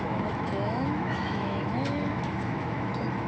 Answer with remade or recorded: remade